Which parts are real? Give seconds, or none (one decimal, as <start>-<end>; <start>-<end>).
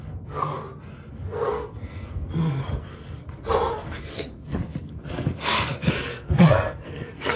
0.6-1.1